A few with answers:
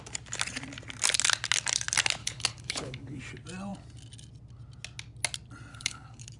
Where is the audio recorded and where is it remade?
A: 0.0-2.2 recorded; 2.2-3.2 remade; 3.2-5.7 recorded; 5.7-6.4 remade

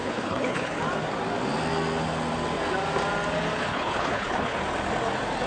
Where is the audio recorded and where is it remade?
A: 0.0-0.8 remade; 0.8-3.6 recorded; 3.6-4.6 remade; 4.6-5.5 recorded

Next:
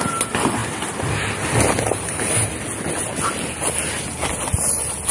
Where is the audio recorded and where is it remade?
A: 0.0-5.1 recorded

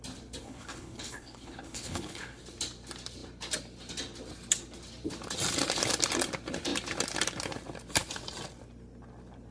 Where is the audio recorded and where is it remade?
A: 0.0-0.4 recorded; 0.4-2.4 remade; 2.4-9.5 recorded

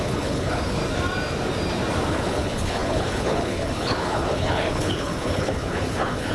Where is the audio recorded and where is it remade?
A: 0.0-0.8 remade; 0.8-2.1 recorded; 2.1-6.3 remade

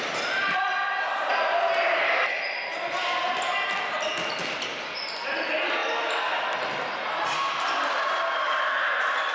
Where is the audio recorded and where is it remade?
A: 0.0-9.3 recorded

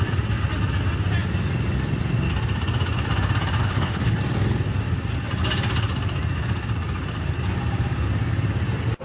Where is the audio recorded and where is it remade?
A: 0.0-3.6 recorded; 3.6-4.2 remade; 4.2-9.0 recorded